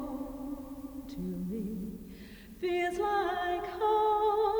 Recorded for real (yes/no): yes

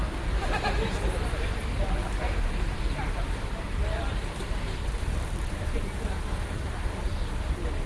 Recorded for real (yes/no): no